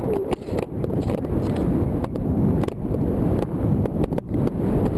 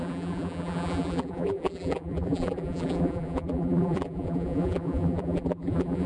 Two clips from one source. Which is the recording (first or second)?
first